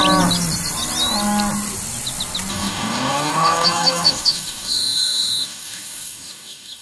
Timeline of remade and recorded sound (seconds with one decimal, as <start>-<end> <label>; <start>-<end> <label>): 0.0-2.5 recorded; 2.5-6.8 remade